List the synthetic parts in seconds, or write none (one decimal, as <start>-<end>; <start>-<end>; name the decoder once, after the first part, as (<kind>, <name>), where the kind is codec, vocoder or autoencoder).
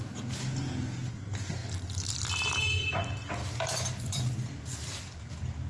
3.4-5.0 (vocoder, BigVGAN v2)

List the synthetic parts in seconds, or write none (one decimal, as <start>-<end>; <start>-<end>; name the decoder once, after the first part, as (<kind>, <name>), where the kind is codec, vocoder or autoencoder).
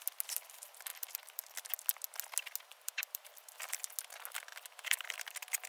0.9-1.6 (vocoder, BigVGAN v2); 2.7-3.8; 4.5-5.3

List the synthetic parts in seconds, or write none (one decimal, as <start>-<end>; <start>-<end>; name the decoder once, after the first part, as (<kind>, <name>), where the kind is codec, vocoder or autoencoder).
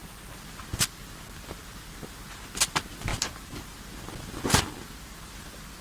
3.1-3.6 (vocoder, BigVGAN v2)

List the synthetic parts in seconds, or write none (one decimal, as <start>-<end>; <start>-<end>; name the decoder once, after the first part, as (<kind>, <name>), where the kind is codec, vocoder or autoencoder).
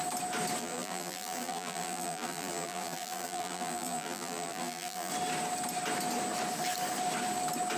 0.6-5.1 (vocoder, BigVGAN v2)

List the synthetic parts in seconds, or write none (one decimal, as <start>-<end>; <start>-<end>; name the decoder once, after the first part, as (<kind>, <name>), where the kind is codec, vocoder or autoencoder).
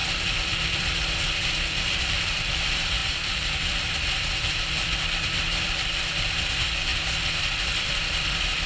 0.0-8.7 (vocoder, BigVGAN v2)